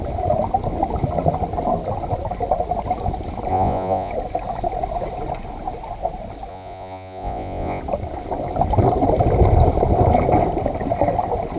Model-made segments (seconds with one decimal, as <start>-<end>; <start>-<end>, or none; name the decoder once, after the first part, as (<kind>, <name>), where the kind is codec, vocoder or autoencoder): 3.5-4.1 (vocoder, Vocos); 6.5-7.8